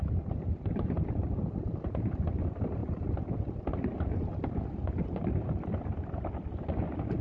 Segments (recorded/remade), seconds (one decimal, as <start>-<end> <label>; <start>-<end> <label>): 0.0-0.5 recorded; 0.5-1.3 remade; 1.3-7.2 recorded